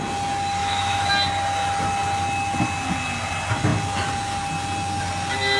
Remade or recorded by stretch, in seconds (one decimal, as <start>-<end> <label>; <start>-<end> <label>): 0.0-0.6 recorded; 0.6-1.1 remade; 1.1-5.6 recorded